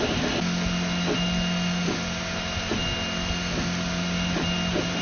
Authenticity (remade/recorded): recorded